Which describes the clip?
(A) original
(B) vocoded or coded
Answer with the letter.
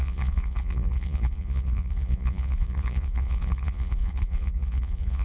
B